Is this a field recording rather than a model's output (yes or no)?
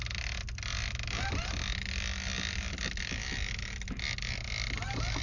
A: yes